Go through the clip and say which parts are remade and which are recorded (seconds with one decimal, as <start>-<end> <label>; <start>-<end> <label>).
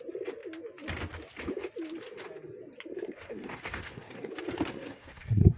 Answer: 0.0-2.9 recorded; 2.9-4.3 remade; 4.3-4.7 recorded; 4.7-5.6 remade